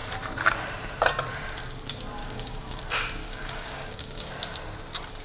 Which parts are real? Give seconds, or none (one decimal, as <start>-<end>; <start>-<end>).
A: 0.0-2.2; 2.8-3.2; 4.3-5.2